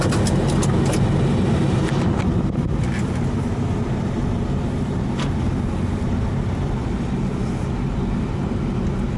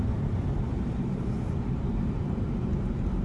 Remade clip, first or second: second